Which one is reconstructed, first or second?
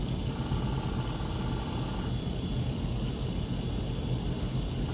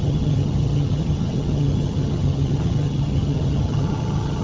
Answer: second